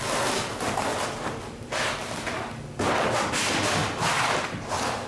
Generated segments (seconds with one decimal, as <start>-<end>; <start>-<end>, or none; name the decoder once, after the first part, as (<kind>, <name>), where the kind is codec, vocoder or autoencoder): none